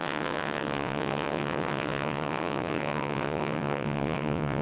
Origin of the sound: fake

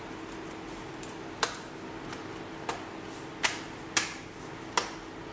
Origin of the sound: real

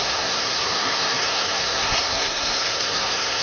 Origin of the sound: fake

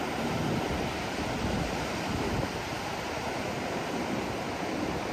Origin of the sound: real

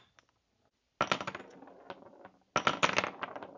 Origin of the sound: real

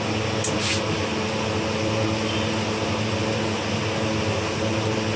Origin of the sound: real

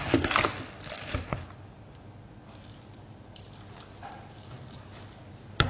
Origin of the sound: real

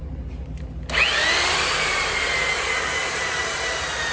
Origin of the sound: real